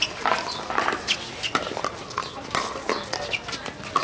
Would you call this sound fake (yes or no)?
no